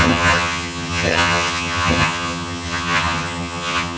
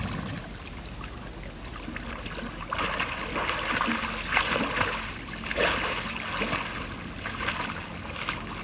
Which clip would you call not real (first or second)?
first